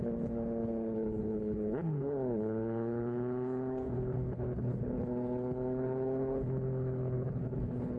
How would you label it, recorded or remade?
remade